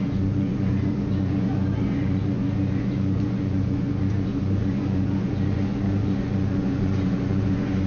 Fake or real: fake